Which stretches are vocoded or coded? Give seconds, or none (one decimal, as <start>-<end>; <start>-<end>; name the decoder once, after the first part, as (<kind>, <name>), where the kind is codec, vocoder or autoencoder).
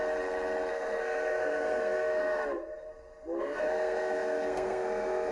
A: 0.7-2.4 (codec, SNAC); 3.4-5.3